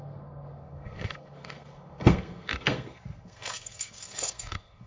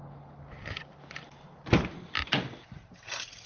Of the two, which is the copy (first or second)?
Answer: first